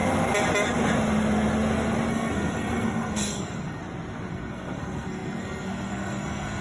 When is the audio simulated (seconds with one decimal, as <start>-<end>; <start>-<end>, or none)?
2.1-3.8; 4.3-6.6